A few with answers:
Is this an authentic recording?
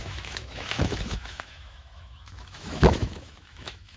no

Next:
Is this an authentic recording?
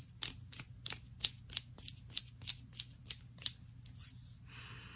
yes